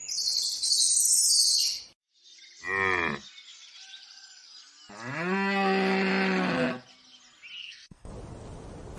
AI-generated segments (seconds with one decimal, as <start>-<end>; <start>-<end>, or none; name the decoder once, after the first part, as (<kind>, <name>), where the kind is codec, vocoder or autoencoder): 7.6-8.1 (codec, SNAC)